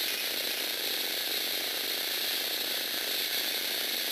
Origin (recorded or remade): remade